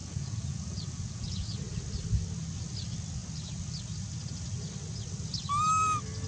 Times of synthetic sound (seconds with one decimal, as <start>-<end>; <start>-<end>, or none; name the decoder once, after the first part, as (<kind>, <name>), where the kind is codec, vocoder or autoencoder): 0.0-1.6 (vocoder, Vocos)